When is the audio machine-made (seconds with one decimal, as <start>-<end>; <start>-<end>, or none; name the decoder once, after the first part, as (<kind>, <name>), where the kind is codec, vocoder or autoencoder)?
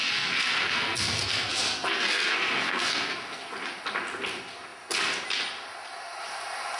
0.0-3.4 (codec, SNAC)